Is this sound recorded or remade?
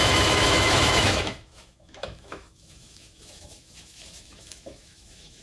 remade